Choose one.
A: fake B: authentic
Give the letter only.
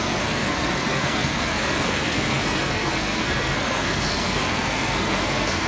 A